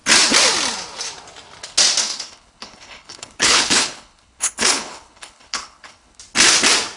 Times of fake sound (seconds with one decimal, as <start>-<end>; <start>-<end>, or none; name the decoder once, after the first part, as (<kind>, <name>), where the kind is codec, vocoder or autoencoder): 2.0-6.2 (codec, HILCodec)